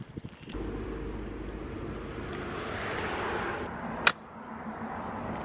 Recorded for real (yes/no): yes